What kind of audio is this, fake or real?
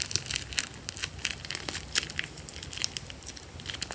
real